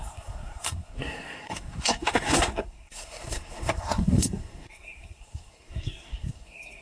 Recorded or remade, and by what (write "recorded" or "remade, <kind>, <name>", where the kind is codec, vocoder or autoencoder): remade, codec, SNAC